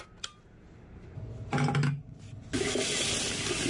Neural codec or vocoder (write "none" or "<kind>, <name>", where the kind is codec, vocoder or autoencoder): none